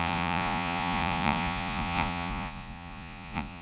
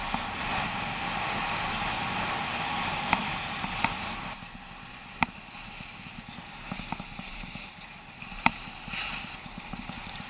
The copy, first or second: first